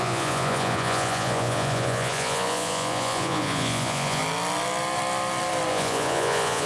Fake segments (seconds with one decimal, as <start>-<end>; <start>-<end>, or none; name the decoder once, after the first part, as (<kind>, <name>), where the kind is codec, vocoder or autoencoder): 0.0-4.2 (vocoder, Vocos); 5.7-6.7